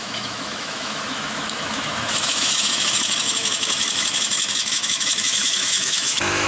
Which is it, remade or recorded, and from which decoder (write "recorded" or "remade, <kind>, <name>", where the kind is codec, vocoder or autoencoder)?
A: remade, autoencoder, DAC-VAE